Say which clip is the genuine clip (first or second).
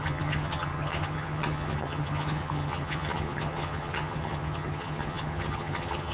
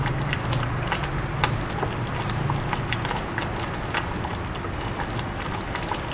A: second